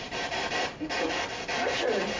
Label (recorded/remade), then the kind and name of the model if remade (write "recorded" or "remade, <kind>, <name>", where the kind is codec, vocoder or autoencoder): recorded